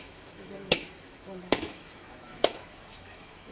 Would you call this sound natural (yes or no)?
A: no